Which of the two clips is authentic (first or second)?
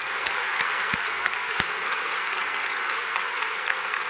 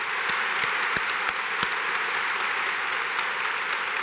second